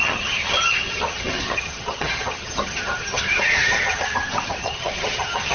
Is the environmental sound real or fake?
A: fake